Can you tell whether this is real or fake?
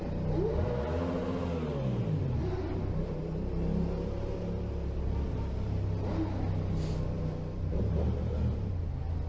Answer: real